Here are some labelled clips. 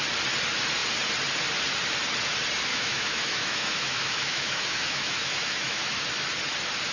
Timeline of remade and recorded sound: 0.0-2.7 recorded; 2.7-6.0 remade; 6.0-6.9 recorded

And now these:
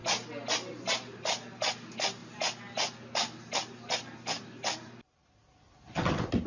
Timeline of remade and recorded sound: 0.0-6.5 recorded

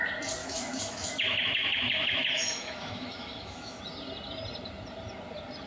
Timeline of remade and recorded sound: 0.0-0.4 recorded; 0.4-3.8 remade; 3.8-5.7 recorded

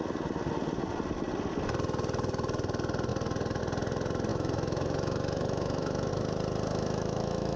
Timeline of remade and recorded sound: 0.0-4.3 recorded; 4.3-6.1 remade; 6.1-6.7 recorded; 6.7-7.6 remade

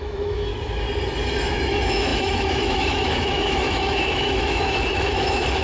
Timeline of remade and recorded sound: 0.0-0.5 remade; 0.5-1.4 recorded; 1.4-5.6 remade